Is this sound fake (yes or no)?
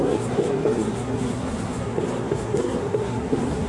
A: yes